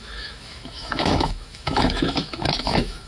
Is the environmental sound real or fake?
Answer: fake